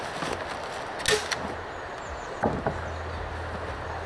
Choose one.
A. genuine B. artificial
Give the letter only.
A